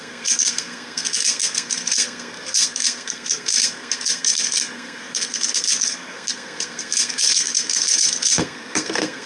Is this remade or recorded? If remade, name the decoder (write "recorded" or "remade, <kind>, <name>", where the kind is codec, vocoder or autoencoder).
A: remade, codec, SNAC